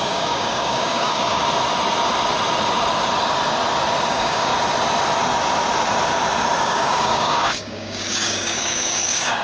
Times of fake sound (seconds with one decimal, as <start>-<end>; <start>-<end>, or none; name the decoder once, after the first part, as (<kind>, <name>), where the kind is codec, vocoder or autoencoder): 0.0-1.4 (codec, DAC); 4.1-4.5; 6.6-9.4